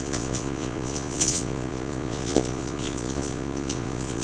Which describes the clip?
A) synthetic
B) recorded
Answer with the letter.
A